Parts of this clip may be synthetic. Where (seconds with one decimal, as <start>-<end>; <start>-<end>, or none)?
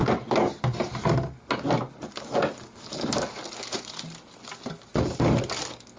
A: none